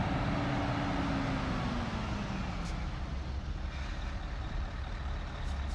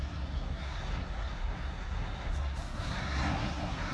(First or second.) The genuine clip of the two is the first